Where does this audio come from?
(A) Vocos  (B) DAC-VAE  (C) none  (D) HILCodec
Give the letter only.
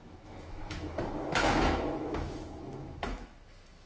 B